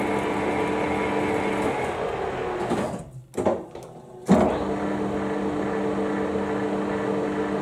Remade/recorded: recorded